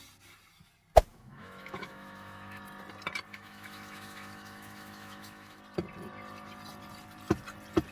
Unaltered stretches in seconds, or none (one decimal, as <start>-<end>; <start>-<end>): 0.0-1.1; 2.6-3.3; 5.6-7.9